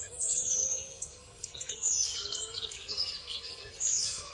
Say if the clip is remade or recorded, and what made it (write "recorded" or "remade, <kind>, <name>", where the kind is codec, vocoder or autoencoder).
remade, codec, SNAC